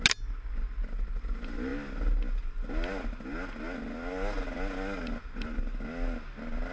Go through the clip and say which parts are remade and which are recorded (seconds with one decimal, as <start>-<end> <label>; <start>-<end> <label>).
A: 0.0-6.7 recorded